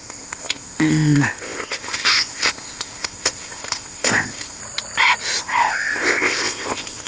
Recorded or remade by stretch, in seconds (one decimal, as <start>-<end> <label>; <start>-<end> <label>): 0.0-4.6 remade; 4.6-5.4 recorded; 5.4-7.1 remade